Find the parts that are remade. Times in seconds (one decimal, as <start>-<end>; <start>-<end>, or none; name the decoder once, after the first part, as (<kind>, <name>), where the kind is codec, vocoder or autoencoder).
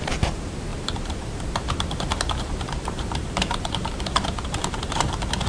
0.0-5.5 (vocoder, BigVGAN v2)